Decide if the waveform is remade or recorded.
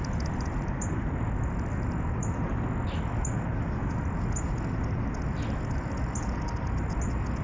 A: recorded